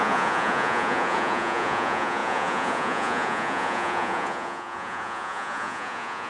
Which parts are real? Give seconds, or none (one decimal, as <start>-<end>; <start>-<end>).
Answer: none